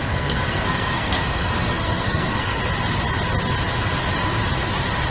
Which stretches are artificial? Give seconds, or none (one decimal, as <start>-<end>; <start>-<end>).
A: 0.0-2.6